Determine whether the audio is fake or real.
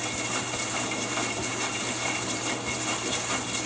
fake